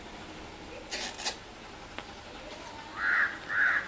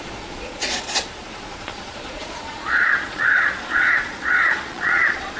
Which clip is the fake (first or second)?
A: second